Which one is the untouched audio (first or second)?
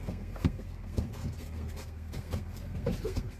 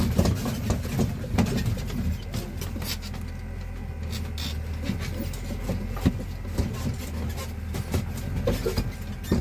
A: second